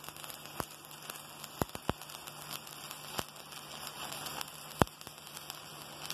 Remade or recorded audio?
recorded